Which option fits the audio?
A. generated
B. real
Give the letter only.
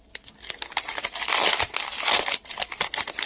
B